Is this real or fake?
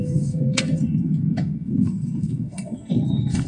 fake